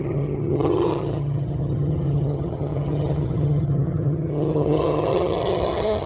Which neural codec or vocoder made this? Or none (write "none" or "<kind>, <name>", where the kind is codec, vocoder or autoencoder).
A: vocoder, HiFi-GAN